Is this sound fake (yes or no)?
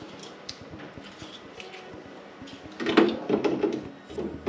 no